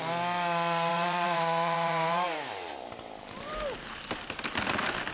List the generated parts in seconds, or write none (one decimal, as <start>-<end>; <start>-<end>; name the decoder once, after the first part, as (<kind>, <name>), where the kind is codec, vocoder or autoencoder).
0.9-4.0 (vocoder, BigVGAN v2)